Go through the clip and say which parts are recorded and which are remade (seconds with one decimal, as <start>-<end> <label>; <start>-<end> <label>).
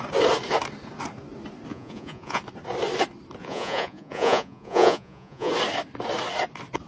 0.0-1.7 recorded; 1.7-2.4 remade; 2.4-3.4 recorded; 3.4-5.5 remade; 5.5-6.9 recorded